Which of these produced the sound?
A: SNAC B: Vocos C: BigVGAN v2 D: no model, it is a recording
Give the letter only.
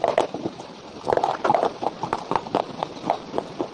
C